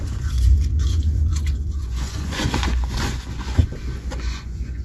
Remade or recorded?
remade